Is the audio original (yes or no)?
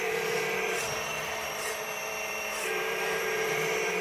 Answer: no